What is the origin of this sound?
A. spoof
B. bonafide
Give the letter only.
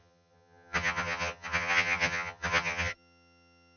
A